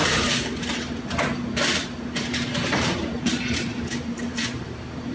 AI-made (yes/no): yes